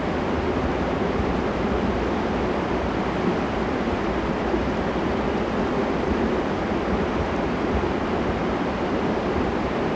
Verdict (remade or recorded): recorded